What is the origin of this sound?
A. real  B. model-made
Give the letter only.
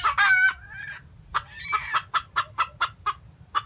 A